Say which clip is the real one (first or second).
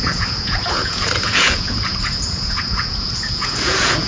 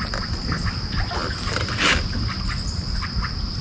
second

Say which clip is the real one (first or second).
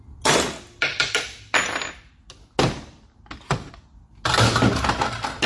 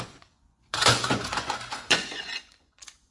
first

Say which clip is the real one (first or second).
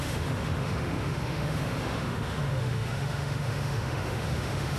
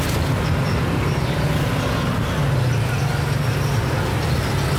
second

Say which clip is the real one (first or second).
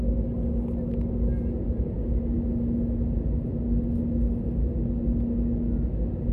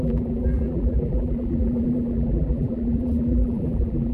first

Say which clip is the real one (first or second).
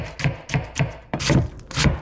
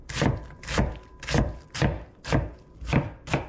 first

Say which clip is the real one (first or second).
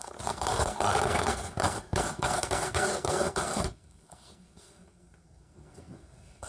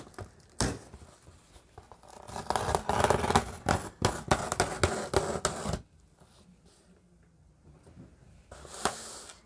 second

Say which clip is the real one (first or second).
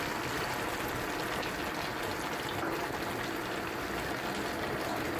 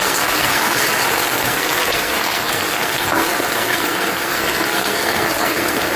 first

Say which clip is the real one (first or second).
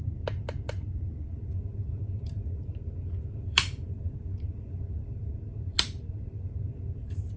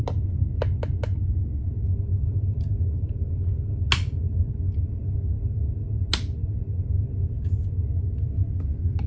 second